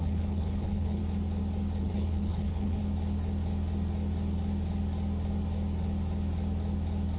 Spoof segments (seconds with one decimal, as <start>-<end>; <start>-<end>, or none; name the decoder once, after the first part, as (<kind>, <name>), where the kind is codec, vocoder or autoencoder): 0.0-1.0 (codec, HILCodec); 1.8-2.8